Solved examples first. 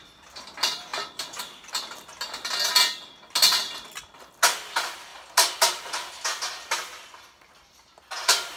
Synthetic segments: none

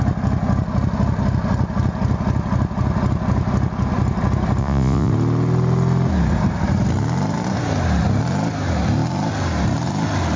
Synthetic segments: 4.6-5.1 (vocoder, Vocos)

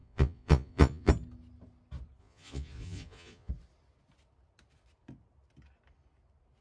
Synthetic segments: 0.0-1.1 (vocoder, Vocos); 2.2-3.5

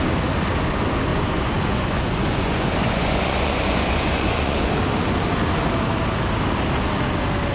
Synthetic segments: 1.1-4.7 (vocoder, Vocos)